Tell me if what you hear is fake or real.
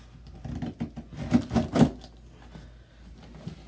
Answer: real